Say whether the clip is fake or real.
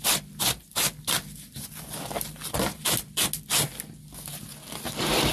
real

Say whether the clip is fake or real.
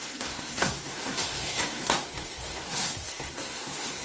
fake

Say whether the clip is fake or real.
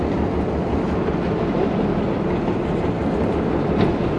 real